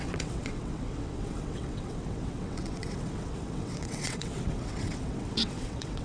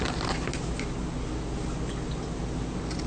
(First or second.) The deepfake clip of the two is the first